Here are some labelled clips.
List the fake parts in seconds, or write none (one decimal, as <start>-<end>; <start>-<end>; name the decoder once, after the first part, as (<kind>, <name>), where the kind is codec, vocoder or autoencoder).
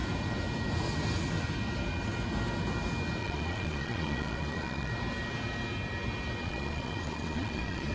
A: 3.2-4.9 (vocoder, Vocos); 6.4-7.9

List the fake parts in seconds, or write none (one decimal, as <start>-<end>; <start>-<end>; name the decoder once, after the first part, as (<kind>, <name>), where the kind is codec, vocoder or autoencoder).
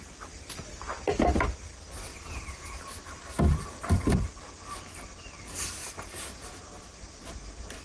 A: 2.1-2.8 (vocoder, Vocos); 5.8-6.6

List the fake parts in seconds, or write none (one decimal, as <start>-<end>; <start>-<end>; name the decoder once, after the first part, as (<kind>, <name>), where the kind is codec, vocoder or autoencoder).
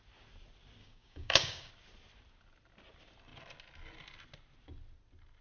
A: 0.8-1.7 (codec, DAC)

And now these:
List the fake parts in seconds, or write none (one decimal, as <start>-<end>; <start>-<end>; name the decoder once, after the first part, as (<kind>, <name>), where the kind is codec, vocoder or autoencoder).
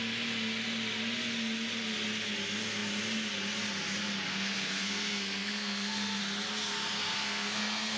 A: 4.3-6.2 (codec, SNAC); 7.0-8.0